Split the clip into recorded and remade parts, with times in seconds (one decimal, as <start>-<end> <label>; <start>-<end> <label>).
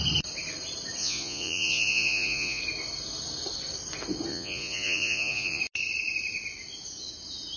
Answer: 0.0-1.0 recorded; 1.0-2.6 remade; 2.6-4.3 recorded; 4.3-5.6 remade; 5.6-7.6 recorded